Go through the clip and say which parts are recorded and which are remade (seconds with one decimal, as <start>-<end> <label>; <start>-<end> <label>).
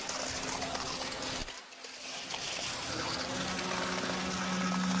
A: 0.0-5.0 recorded